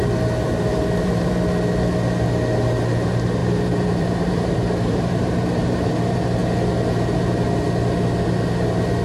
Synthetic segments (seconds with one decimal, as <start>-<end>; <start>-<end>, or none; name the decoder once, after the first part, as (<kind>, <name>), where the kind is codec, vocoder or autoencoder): 0.7-1.3 (vocoder, BigVGAN v2); 3.4-5.9